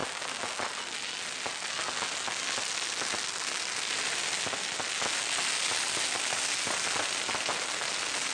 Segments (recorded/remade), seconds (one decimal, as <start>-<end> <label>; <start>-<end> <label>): 0.0-8.3 recorded